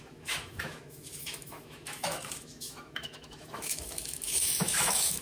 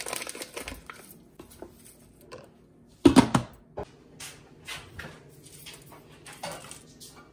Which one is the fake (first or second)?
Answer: first